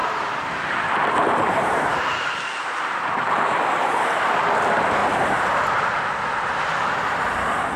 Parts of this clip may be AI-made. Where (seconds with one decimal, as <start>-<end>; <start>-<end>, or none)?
0.0-5.0

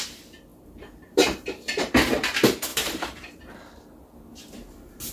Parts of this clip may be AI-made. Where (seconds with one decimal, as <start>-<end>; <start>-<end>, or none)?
0.5-1.9; 2.7-3.4

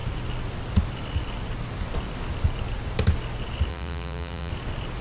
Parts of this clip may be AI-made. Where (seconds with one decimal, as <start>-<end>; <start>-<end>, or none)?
3.7-4.5

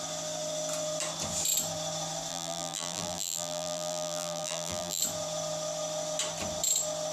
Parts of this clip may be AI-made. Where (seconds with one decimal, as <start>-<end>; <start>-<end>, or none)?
2.3-5.0

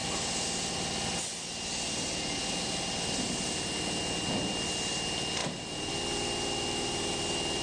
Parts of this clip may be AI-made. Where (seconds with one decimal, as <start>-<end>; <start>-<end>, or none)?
5.4-5.9

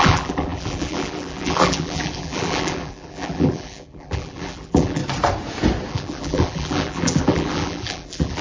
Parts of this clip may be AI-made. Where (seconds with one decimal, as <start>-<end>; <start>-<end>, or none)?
0.0-5.0; 5.9-8.4

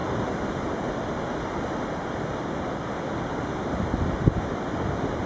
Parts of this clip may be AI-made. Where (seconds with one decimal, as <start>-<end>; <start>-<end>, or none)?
3.9-4.5